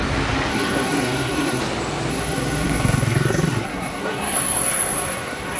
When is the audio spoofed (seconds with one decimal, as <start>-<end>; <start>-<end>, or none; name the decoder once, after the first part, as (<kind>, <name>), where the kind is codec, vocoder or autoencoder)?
0.5-1.6 (codec, SNAC); 2.1-5.6